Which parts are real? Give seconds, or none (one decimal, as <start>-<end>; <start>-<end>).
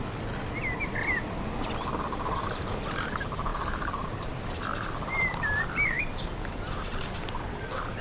0.0-3.5; 4.3-4.7; 6.0-8.0